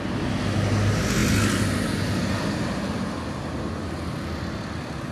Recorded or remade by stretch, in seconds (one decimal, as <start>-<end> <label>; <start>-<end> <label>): 0.0-5.1 recorded